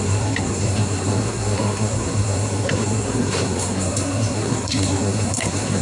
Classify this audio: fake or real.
fake